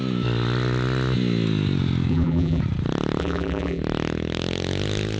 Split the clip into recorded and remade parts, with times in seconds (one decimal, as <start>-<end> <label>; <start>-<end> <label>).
0.0-2.1 recorded; 2.1-2.6 remade; 2.6-3.2 recorded; 3.2-3.8 remade; 3.8-5.2 recorded